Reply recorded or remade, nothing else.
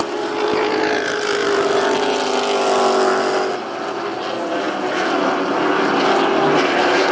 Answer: recorded